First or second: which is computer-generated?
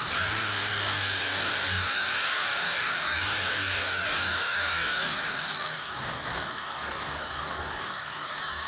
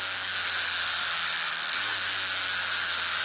first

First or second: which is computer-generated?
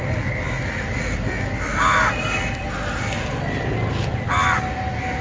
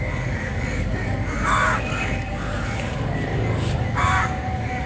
second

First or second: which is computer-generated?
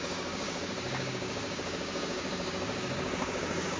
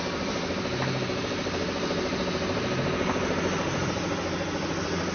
first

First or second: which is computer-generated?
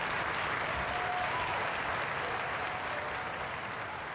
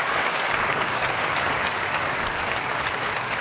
second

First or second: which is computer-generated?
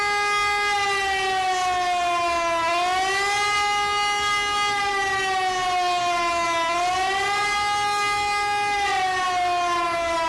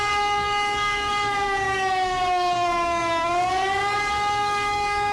second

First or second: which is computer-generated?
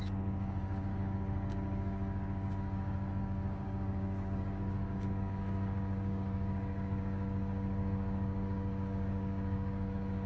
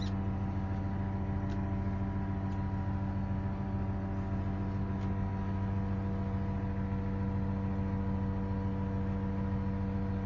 first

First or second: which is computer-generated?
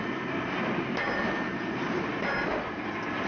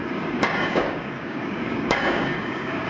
second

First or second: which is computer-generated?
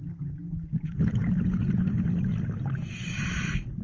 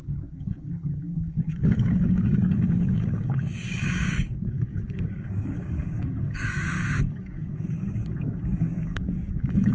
second